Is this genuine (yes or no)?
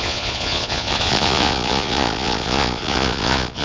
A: no